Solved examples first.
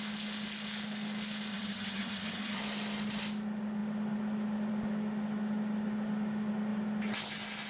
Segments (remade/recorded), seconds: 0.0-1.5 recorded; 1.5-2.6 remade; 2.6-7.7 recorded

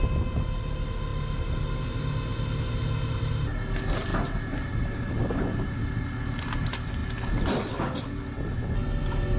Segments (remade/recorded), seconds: 0.0-9.4 recorded

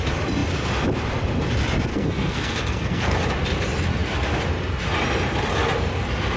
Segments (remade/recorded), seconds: 0.0-1.9 recorded; 1.9-3.2 remade; 3.2-6.4 recorded

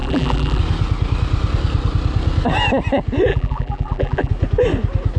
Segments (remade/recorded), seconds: 0.0-0.6 remade; 0.6-3.3 recorded; 3.3-4.3 remade; 4.3-5.2 recorded